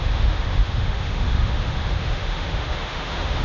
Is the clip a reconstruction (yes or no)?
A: yes